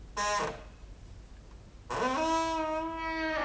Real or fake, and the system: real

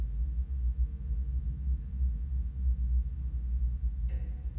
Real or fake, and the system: real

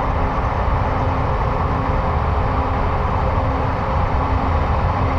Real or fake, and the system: fake, vocoder, BigVGAN v2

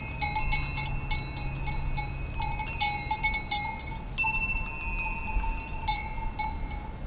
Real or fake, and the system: real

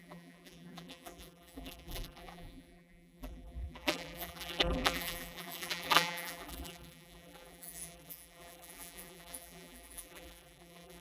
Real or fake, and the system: fake, vocoder, BigVGAN v2